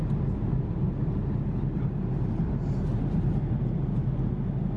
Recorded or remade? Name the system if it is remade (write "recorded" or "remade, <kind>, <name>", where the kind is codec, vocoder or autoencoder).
recorded